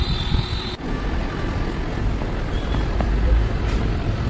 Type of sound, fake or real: fake